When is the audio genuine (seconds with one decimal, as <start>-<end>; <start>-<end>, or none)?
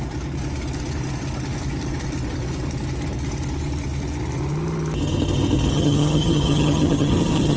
0.0-5.7